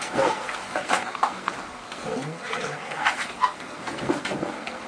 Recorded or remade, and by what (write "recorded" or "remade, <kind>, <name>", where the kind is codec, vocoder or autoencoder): remade, codec, SNAC